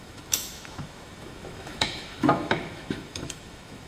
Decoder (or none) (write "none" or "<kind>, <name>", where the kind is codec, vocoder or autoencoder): autoencoder, DAC-VAE